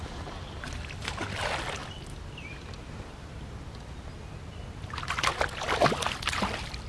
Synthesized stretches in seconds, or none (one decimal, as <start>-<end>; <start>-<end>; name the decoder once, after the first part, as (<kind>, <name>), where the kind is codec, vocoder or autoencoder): none